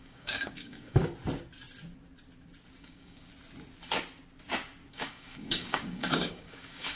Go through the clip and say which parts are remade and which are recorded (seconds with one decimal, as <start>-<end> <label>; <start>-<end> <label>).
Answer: 0.0-1.0 remade; 1.0-2.8 recorded; 2.8-3.3 remade; 3.3-4.9 recorded; 4.9-7.0 remade